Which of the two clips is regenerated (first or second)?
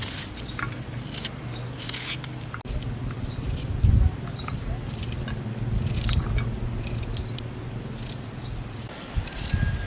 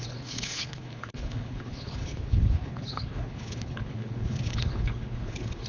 second